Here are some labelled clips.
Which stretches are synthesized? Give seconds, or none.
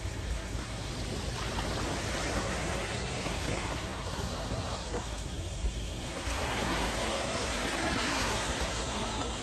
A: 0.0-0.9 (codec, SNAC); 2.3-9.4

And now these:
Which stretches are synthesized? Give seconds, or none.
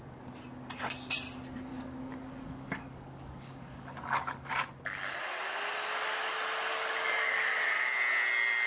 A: 1.7-4.5 (codec, DAC); 6.7-7.6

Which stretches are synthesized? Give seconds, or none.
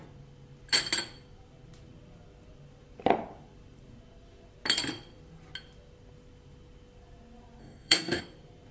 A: 7.6-8.2 (codec, DAC)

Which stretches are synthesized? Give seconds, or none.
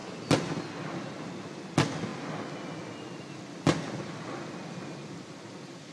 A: 0.0-0.6 (vocoder, BigVGAN v2)